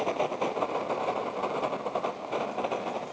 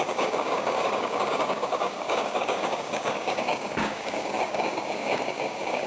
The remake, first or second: second